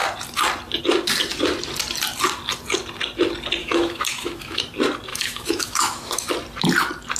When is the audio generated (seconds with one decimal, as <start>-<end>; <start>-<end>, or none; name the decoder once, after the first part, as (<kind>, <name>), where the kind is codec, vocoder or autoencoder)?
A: 3.6-4.6 (autoencoder, DAC-VAE); 5.1-6.3

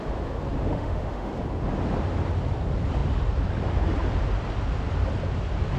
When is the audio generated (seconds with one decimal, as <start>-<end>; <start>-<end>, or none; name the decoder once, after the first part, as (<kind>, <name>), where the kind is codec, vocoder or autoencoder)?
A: 0.7-1.3 (autoencoder, DAC-VAE)

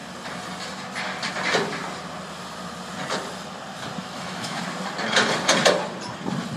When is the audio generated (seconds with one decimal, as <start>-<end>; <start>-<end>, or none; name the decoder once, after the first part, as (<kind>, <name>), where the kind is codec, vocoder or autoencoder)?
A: 4.0-4.6 (autoencoder, DAC-VAE)